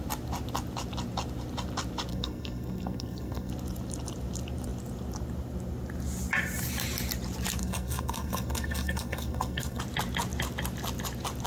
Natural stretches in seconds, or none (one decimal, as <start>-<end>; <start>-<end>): 0.0-2.1; 3.5-7.6; 9.8-11.5